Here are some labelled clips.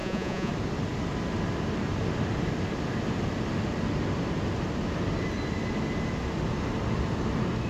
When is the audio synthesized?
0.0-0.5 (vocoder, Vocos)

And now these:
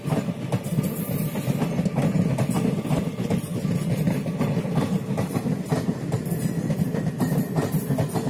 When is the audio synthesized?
none

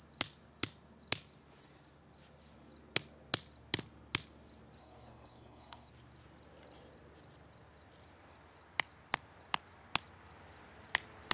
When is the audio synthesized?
4.8-5.9 (codec, SNAC)

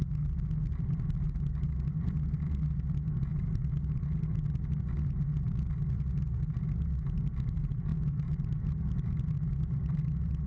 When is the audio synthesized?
none

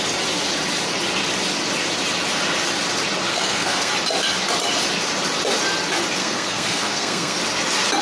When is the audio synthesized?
3.3-3.9 (codec, SNAC); 6.2-7.4

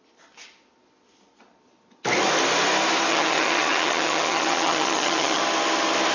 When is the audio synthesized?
3.1-5.4 (vocoder, HiFi-GAN)

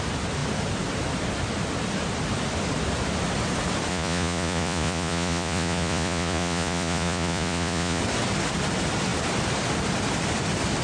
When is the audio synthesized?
3.9-8.0 (vocoder, Vocos)

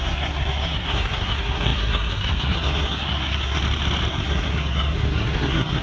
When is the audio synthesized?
0.0-3.6 (codec, SNAC); 4.1-5.8